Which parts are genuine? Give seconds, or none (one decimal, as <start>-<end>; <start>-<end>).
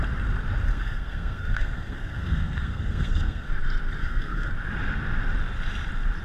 0.0-0.7; 3.5-4.0; 4.5-6.2